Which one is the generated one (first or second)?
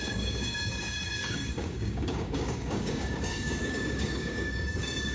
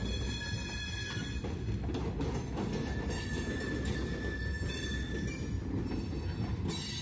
first